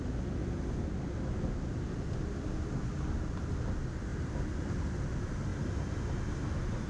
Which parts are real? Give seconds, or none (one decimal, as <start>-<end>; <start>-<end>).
0.0-6.9